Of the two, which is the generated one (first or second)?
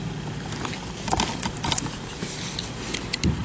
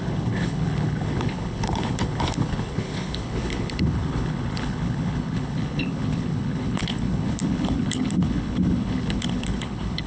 second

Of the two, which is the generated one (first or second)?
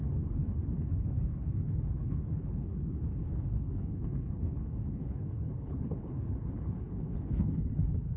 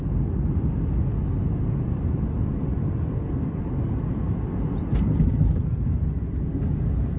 first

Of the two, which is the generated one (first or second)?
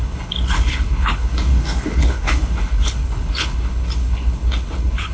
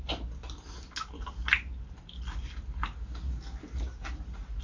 first